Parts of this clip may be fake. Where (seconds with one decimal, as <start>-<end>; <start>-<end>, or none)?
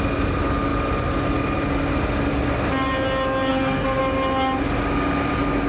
3.5-4.0